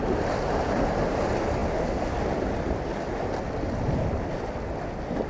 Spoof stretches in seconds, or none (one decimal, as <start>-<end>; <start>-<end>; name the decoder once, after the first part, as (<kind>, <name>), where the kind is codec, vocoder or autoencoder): none

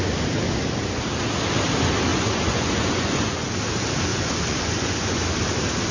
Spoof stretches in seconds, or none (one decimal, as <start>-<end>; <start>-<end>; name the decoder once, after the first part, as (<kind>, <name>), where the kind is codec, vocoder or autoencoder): 2.1-3.5 (vocoder, Vocos); 4.1-5.2

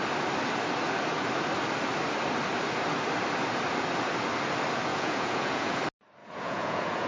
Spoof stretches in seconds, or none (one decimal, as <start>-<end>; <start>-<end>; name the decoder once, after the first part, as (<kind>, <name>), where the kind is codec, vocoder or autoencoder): 4.9-5.8 (vocoder, Vocos); 6.2-7.1

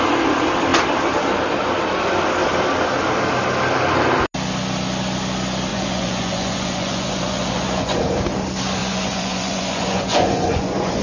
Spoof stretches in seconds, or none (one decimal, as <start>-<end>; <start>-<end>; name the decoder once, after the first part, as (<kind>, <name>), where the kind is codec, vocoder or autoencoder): 5.7-8.0 (vocoder, Vocos); 8.8-11.0

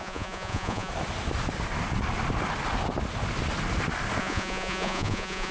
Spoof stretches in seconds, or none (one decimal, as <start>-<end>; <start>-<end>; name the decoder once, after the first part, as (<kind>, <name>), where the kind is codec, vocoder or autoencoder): 0.0-0.9 (vocoder, Vocos); 4.2-5.5

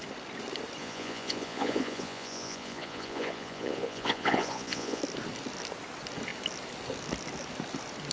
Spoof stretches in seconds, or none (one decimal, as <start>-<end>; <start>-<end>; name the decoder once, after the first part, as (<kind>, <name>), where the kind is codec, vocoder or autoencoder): 0.8-5.0 (vocoder, Vocos)